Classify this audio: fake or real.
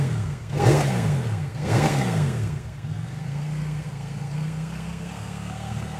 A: fake